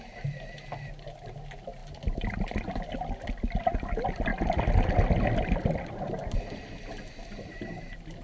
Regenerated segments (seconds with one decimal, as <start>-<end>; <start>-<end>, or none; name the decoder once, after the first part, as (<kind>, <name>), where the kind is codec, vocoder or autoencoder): none